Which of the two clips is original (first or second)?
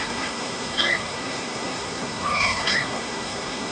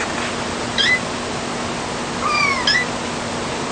second